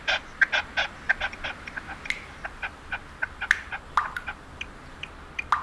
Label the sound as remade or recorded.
recorded